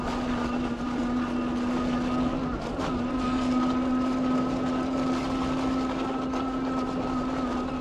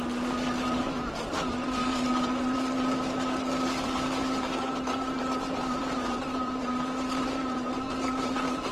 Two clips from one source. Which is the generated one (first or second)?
second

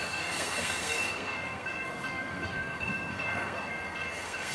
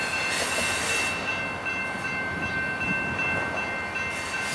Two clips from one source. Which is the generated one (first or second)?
first